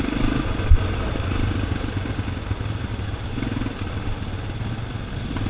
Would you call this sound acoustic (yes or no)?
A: yes